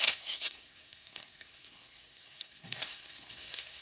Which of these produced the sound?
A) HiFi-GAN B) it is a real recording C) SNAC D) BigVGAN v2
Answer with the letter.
C